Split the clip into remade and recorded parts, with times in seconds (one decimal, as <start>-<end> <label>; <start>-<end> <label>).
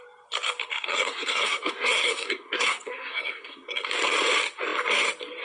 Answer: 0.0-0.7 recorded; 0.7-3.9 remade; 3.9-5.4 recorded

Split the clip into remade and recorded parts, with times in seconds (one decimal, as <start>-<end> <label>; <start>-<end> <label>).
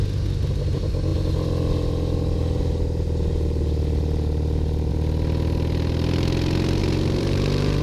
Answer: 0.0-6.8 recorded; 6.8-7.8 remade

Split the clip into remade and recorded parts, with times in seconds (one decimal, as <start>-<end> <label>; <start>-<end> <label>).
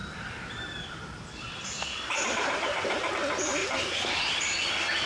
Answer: 0.0-3.1 remade; 3.1-5.1 recorded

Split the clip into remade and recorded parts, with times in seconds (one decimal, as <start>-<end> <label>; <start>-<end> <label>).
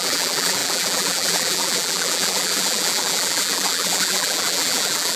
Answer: 0.0-5.2 remade